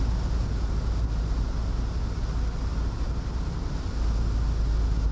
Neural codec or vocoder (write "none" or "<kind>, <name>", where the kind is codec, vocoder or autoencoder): none